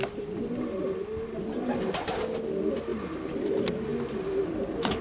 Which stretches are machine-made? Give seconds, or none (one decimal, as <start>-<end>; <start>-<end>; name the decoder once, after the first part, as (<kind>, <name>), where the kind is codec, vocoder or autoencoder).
none